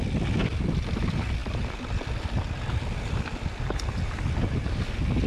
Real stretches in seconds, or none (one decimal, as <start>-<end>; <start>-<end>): 0.0-5.3